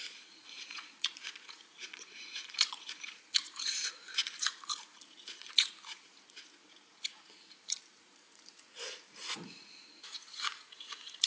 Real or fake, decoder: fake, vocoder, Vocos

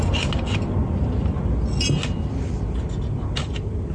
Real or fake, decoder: real